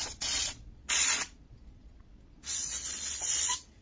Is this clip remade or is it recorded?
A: remade